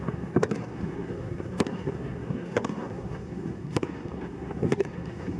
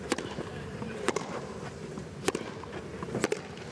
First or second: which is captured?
second